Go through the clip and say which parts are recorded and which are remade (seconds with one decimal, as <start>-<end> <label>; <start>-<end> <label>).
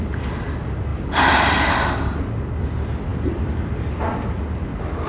0.0-0.9 recorded; 0.9-2.2 remade; 2.2-3.1 recorded; 3.1-4.0 remade; 4.0-5.1 recorded